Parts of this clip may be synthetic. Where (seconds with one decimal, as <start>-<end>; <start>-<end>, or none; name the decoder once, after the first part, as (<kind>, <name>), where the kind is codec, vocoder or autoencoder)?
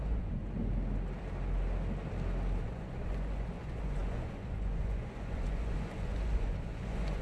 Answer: 0.0-0.4 (vocoder, Vocos); 2.6-7.2